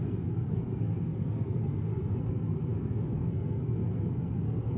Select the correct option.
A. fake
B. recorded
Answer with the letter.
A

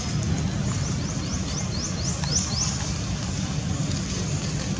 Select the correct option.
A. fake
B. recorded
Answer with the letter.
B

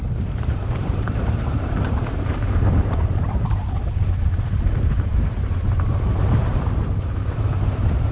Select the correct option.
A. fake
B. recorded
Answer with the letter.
A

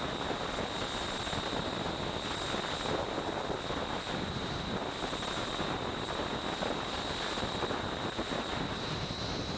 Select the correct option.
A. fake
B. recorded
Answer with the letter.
B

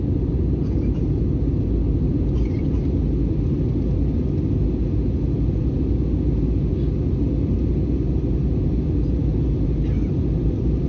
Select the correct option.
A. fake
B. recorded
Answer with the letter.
B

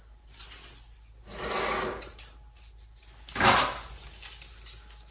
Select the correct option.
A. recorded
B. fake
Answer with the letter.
A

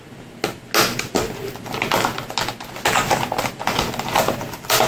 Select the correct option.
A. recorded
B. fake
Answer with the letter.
A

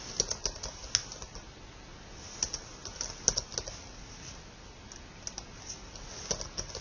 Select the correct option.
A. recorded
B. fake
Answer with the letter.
A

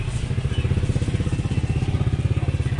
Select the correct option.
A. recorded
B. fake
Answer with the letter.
A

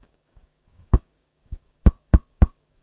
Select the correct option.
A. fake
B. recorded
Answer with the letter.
A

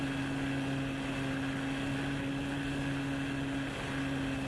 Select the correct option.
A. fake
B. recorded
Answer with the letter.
B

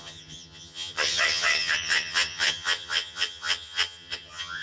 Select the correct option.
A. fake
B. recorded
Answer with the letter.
A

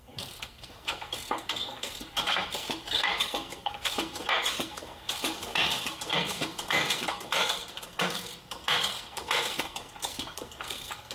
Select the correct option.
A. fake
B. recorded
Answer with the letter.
A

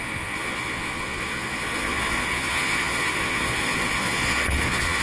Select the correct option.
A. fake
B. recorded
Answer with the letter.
A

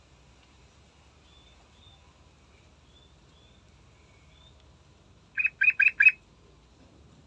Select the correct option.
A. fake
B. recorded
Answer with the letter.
B